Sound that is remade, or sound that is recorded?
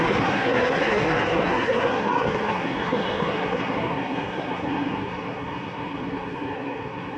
remade